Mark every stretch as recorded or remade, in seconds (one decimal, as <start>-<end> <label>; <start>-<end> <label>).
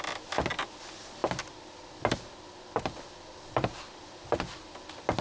0.0-5.2 recorded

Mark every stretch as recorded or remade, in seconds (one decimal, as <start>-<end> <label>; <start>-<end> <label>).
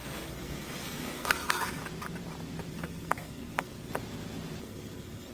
0.0-1.8 remade; 1.8-2.7 recorded; 2.7-3.9 remade; 3.9-4.6 recorded; 4.6-5.3 remade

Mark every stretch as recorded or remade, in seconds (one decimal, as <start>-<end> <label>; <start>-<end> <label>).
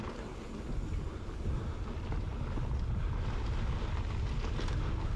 0.0-5.2 recorded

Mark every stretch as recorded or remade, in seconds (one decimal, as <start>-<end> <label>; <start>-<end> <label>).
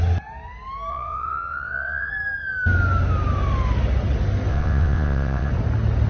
0.0-0.9 recorded; 0.9-2.1 remade; 2.1-4.5 recorded; 4.5-5.5 remade; 5.5-6.1 recorded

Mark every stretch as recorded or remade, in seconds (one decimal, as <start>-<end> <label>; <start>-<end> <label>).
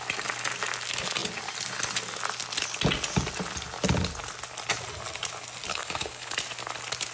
0.0-5.7 recorded; 5.7-6.3 remade; 6.3-7.1 recorded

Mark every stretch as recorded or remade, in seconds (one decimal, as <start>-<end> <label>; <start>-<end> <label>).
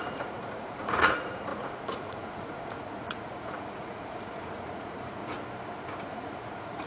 0.0-5.2 remade; 5.2-6.0 recorded; 6.0-6.9 remade